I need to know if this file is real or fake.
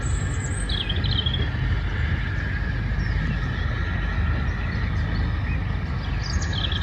real